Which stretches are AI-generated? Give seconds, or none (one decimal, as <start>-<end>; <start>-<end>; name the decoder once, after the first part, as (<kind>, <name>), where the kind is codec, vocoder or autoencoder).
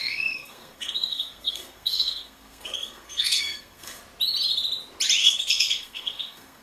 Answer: 0.0-4.0 (codec, SNAC); 5.2-6.6